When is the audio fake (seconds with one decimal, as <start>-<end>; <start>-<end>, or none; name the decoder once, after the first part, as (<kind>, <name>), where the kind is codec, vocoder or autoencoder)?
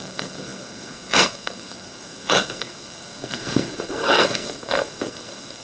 0.0-5.6 (codec, SNAC)